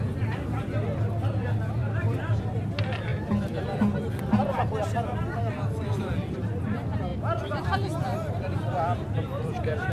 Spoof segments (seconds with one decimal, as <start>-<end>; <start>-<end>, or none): 1.8-2.7; 7.1-9.9